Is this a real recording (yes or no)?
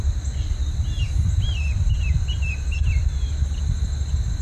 yes